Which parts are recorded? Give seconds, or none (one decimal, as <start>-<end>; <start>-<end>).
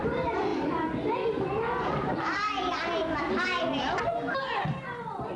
3.7-5.0